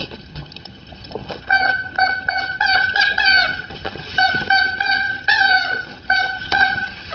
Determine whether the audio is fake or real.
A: fake